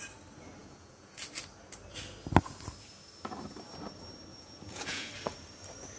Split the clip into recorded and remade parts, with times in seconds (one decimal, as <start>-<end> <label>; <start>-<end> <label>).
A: 0.0-0.6 recorded; 0.6-1.2 remade; 1.2-4.3 recorded; 4.3-5.1 remade; 5.1-6.0 recorded